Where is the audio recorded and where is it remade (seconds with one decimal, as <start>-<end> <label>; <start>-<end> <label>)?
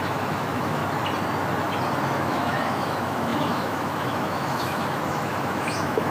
0.0-0.8 remade; 0.8-2.0 recorded; 2.0-6.1 remade